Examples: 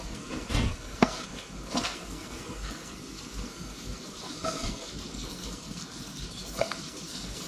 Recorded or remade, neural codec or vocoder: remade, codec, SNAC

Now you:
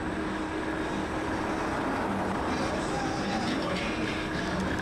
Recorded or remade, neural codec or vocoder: recorded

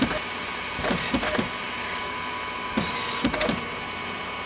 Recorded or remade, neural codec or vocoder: recorded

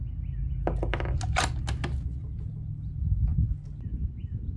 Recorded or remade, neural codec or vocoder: recorded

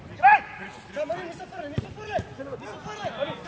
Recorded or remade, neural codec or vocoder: recorded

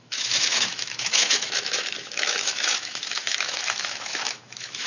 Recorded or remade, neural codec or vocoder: remade, autoencoder, DAC-VAE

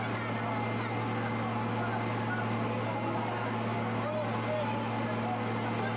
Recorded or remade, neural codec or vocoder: recorded